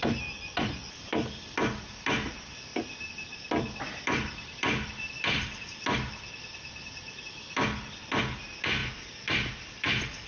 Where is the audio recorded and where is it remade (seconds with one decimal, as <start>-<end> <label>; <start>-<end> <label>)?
0.0-10.3 recorded